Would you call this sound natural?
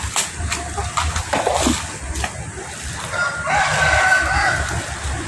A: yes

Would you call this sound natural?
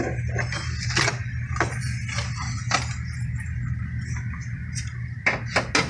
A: yes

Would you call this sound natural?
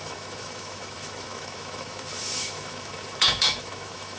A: no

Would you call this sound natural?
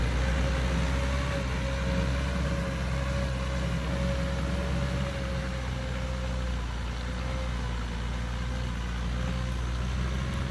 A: yes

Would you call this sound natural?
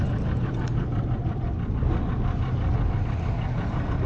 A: yes